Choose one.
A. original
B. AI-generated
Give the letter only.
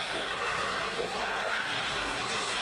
B